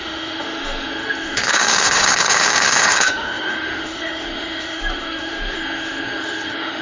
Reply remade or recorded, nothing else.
remade